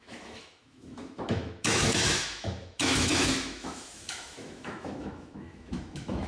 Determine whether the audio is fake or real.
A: fake